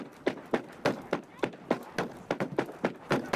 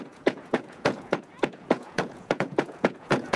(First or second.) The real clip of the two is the first